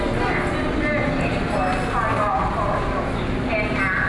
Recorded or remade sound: recorded